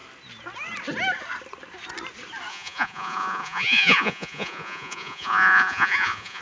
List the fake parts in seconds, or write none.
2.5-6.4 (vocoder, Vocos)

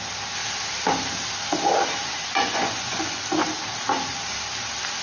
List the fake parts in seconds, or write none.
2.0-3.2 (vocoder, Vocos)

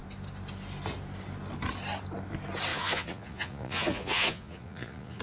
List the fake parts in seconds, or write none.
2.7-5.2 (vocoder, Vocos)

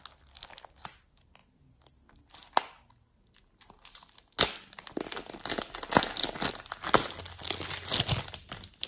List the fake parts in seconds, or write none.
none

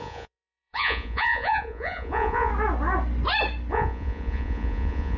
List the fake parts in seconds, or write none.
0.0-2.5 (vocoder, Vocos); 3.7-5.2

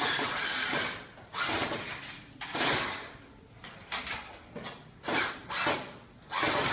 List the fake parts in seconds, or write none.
none